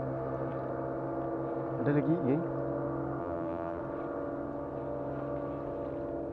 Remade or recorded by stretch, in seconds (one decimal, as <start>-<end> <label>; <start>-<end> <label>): 0.0-3.2 recorded; 3.2-3.8 remade; 3.8-6.3 recorded